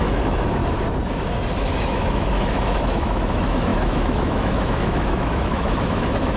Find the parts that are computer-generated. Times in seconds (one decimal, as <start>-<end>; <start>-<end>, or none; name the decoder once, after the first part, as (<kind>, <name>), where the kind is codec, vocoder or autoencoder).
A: 0.0-0.6 (autoencoder, DAC-VAE); 1.6-6.4